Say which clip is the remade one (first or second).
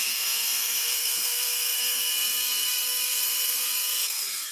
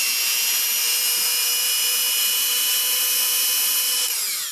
first